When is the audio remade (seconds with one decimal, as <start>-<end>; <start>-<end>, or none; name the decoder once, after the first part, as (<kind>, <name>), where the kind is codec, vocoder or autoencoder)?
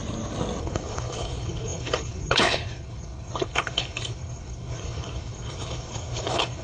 0.6-6.6 (codec, HILCodec)